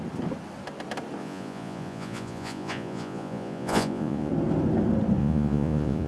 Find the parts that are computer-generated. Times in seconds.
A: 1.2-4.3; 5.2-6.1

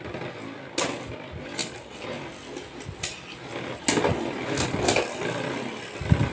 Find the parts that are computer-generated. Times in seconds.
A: none

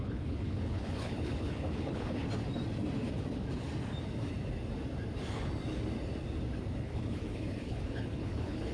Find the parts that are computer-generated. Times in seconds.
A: 0.0-2.2; 6.7-8.7

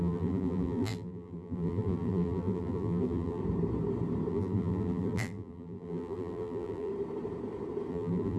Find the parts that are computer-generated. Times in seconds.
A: 0.0-3.4; 4.3-6.9; 7.9-8.4

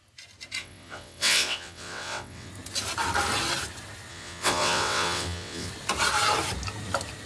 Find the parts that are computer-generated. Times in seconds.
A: 0.6-2.5; 4.1-5.7

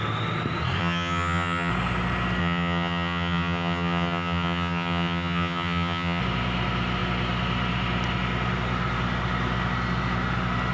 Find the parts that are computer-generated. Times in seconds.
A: 0.8-1.7; 2.4-6.2

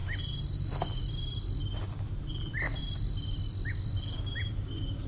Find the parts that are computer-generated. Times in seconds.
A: none

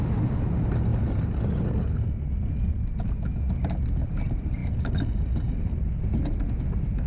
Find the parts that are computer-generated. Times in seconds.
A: none